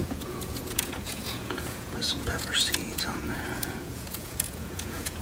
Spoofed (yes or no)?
yes